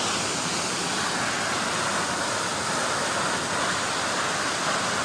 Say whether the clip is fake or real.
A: real